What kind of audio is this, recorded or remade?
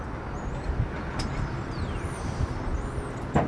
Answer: recorded